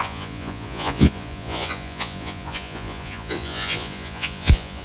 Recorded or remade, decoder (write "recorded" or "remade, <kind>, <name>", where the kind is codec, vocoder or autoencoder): remade, vocoder, Vocos